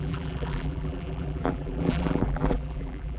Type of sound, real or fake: fake